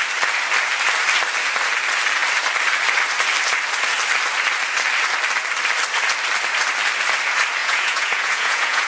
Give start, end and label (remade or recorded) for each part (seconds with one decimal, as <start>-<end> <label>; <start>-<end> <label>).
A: 0.0-7.6 recorded; 7.6-8.9 remade